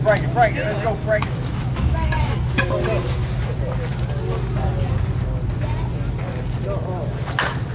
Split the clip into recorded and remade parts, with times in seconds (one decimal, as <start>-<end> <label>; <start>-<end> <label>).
0.0-1.0 recorded; 1.0-2.7 remade; 2.7-7.7 recorded